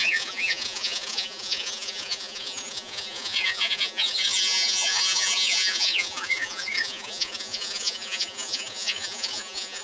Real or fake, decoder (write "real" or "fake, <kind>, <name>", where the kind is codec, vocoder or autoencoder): fake, vocoder, Vocos